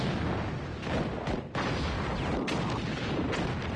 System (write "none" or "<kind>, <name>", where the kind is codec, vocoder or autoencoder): none